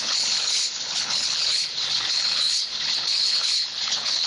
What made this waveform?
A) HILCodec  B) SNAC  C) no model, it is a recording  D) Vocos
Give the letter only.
A